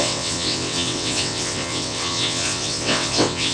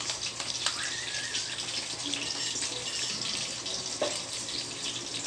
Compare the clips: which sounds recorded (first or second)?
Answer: second